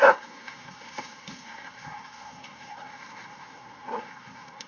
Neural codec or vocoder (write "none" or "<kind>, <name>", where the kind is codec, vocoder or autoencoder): codec, SNAC